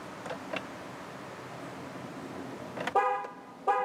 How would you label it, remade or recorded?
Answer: recorded